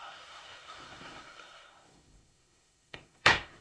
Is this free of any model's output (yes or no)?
no